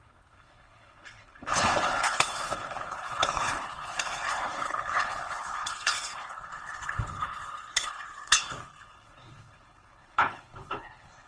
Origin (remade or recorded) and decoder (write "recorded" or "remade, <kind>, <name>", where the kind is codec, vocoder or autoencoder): remade, codec, HILCodec